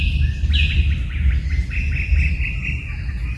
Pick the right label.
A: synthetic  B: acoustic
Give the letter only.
B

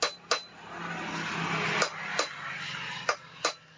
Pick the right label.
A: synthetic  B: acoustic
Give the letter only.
B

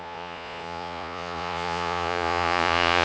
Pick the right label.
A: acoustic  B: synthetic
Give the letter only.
B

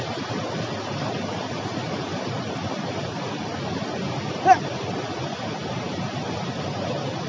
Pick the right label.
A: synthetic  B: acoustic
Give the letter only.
B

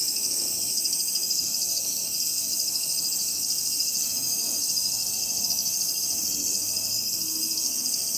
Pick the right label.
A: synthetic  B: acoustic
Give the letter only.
A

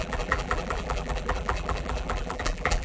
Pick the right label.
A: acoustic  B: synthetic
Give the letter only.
B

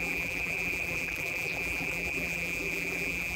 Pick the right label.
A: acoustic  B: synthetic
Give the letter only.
B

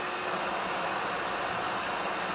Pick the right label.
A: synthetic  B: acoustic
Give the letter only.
B